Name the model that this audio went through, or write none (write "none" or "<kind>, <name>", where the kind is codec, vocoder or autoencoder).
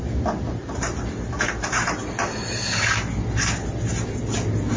none